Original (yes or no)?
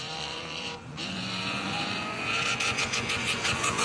no